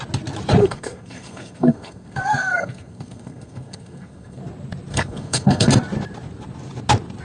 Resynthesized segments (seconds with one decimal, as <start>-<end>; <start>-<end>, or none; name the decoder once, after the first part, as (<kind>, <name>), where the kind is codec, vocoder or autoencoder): 0.6-4.4 (codec, SNAC); 4.9-5.7